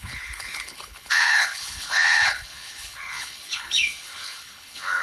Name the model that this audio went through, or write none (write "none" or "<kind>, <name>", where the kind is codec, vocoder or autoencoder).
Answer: codec, HILCodec